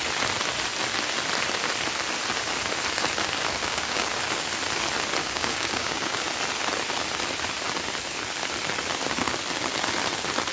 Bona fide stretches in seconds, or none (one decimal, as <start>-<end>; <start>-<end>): 0.0-3.6; 4.1-5.2; 6.2-10.5